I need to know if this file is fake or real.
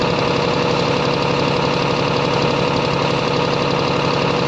real